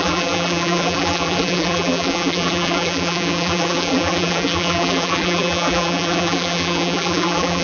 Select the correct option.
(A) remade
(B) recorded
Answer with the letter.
A